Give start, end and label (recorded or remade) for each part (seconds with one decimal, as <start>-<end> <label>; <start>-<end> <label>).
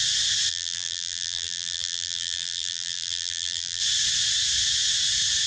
0.0-0.5 recorded; 0.5-3.8 remade; 3.8-5.5 recorded